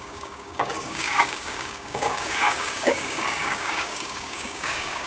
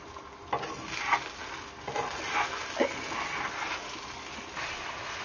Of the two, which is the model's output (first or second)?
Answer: first